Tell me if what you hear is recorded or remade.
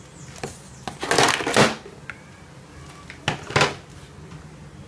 recorded